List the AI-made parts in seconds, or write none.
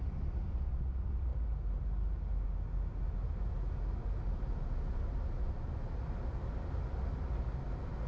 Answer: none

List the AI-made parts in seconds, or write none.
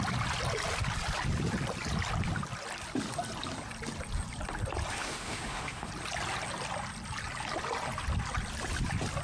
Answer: 4.9-5.9 (autoencoder, DAC-VAE)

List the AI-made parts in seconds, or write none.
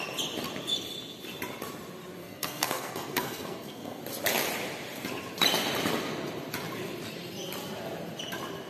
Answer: 2.2-4.0 (codec, SNAC)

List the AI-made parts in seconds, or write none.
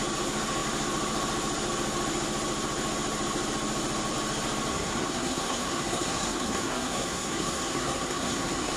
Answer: 4.7-8.8 (codec, SNAC)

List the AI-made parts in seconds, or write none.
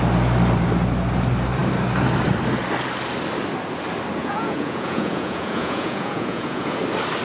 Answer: 4.2-6.8 (vocoder, Vocos)